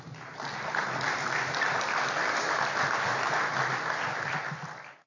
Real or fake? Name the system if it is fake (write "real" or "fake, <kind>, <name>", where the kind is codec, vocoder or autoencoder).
real